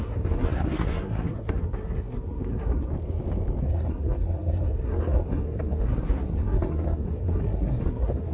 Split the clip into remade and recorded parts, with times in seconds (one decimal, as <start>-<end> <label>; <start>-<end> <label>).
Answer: 0.0-2.9 remade; 2.9-3.6 recorded; 3.6-8.3 remade